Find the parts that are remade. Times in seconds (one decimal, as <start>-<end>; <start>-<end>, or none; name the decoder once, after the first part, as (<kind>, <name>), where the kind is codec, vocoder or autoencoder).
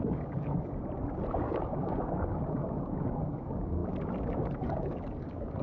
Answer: 0.0-0.8 (codec, DAC); 1.3-5.6